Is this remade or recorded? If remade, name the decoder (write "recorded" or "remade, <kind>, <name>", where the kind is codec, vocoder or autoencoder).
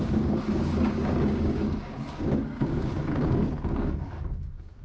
remade, codec, DAC